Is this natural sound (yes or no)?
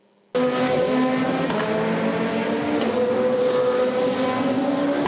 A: yes